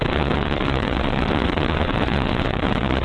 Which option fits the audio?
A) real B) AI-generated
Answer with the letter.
B